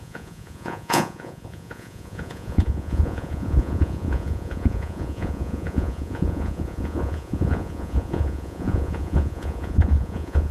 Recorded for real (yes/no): no